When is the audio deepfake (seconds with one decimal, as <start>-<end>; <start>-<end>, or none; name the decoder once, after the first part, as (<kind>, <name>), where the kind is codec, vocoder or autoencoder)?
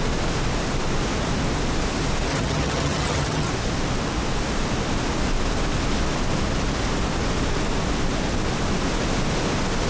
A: 2.3-3.5 (vocoder, HiFi-GAN)